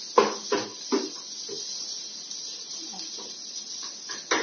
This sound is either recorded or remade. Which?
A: recorded